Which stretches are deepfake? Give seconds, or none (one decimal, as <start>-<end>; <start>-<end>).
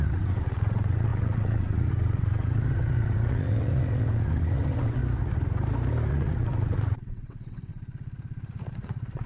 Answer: 0.0-5.0; 6.1-7.7; 8.7-9.3